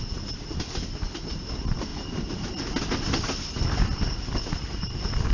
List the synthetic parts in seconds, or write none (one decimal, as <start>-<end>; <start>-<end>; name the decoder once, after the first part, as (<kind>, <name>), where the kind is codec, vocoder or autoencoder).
none

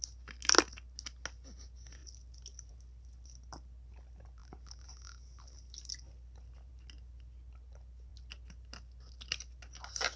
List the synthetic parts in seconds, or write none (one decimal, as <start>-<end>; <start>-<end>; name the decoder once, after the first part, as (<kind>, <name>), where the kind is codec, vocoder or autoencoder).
none

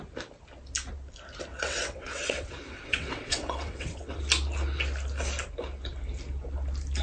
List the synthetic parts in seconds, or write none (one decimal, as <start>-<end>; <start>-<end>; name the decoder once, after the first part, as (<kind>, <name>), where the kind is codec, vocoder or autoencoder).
1.5-4.2 (vocoder, WaveNeXt)

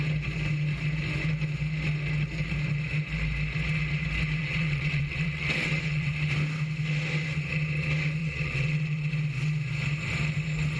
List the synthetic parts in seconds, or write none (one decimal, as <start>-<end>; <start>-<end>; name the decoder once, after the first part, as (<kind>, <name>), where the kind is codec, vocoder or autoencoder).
4.4-6.1 (vocoder, WaveNeXt); 8.2-9.1

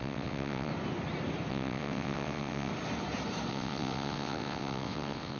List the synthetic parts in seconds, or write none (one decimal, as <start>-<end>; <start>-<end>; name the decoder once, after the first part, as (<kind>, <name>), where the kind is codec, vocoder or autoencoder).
0.0-0.7 (vocoder, WaveNeXt); 1.5-2.7; 3.5-5.4